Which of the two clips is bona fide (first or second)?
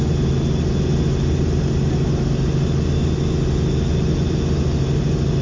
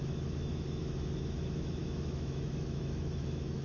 first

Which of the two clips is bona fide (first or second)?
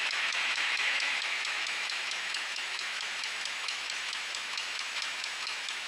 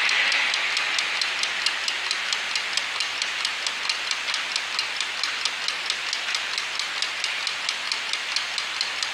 second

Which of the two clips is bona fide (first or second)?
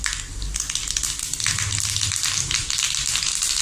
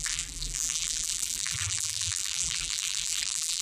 first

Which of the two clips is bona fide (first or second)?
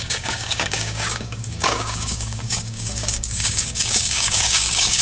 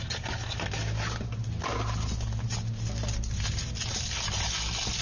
second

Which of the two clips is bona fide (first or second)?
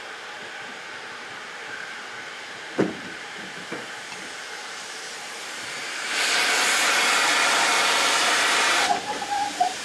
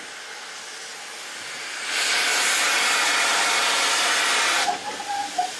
second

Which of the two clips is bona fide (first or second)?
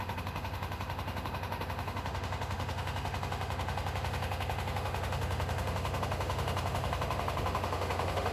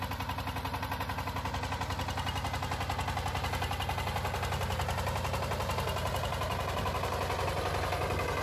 second